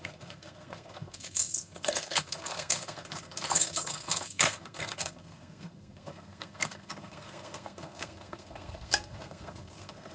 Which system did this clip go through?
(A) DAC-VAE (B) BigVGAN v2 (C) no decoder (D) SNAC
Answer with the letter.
D